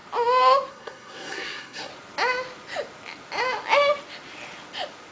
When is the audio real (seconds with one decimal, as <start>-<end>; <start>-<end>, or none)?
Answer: 0.0-0.7; 1.9-5.1